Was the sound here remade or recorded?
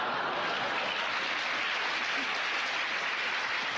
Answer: recorded